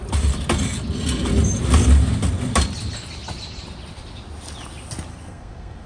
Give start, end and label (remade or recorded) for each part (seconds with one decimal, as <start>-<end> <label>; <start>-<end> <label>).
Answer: 0.0-5.1 recorded; 5.1-5.9 remade